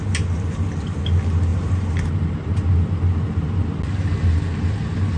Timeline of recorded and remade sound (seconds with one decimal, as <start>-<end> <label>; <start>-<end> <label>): 0.0-1.5 recorded; 1.5-3.8 remade; 3.8-5.2 recorded